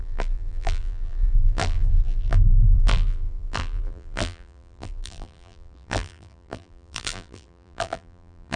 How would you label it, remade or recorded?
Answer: remade